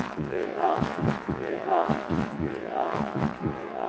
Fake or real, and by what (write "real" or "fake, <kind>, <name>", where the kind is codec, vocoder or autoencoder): fake, vocoder, Vocos